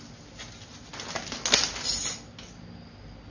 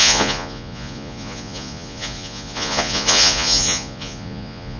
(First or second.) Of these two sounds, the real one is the first